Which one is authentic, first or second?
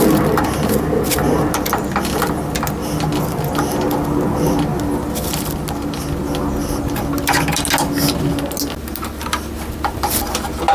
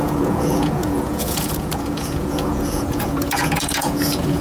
first